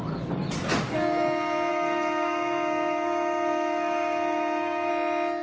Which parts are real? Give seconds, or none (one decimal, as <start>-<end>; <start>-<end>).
0.0-1.7; 4.9-5.4